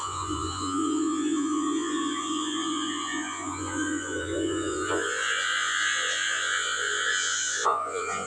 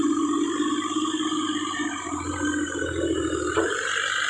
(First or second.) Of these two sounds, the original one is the second